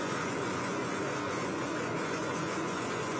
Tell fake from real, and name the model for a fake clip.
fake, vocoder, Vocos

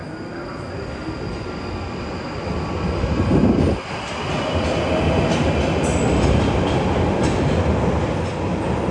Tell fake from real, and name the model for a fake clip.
real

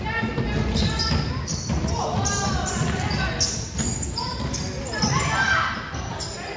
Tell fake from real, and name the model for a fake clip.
real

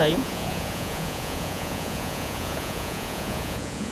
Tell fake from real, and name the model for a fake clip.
fake, vocoder, Vocos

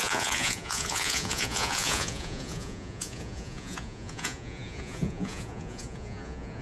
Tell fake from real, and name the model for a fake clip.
fake, vocoder, Vocos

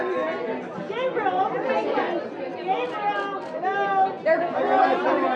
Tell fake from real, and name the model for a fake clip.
real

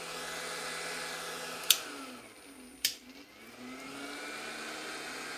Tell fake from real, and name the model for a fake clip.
real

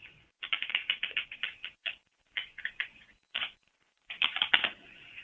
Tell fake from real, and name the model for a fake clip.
fake, vocoder, Vocos